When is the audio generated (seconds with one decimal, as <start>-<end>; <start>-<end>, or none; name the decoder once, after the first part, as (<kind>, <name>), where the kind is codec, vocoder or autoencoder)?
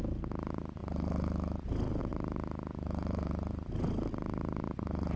none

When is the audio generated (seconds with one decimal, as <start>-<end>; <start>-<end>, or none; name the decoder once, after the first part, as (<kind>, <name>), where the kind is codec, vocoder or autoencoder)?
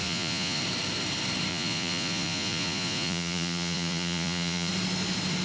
0.0-0.6 (vocoder, Vocos); 1.5-4.7